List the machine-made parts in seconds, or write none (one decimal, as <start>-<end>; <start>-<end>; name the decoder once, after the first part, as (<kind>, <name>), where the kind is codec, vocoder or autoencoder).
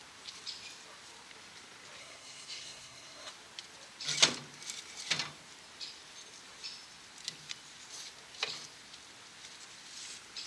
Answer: 2.0-3.3 (codec, SNAC)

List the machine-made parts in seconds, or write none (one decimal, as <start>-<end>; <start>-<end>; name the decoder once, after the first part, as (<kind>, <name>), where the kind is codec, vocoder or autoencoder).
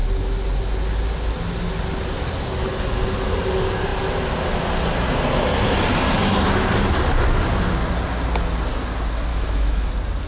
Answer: 9.3-9.9 (autoencoder, DAC-VAE)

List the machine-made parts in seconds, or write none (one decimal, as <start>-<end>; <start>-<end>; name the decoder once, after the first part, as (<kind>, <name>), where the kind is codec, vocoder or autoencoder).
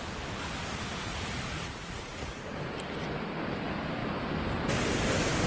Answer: 1.1-2.4 (vocoder, Vocos)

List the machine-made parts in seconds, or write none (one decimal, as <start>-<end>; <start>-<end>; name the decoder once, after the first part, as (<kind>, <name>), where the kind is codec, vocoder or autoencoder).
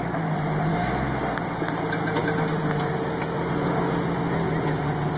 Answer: 0.7-1.2 (autoencoder, DAC-VAE)